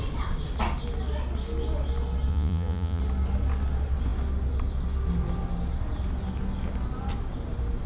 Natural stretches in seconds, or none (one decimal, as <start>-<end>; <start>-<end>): 0.0-2.3; 3.0-7.9